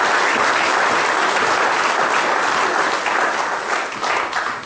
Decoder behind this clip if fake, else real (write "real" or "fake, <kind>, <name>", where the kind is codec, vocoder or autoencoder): real